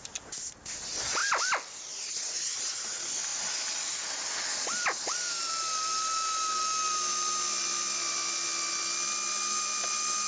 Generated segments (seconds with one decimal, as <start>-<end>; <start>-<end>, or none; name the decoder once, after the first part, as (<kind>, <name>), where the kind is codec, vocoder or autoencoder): none